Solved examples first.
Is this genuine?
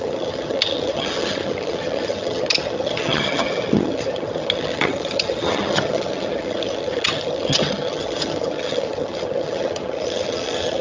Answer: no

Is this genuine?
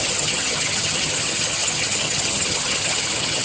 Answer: no